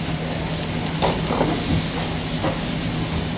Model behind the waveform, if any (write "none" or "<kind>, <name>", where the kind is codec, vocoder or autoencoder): none